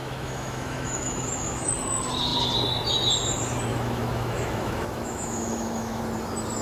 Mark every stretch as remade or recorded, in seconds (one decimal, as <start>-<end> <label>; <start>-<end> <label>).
0.0-1.7 remade; 1.7-3.7 recorded; 3.7-6.0 remade; 6.0-6.6 recorded